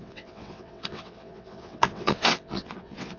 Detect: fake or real fake